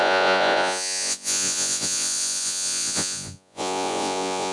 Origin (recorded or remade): remade